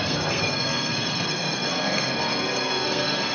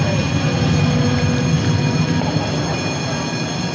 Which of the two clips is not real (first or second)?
first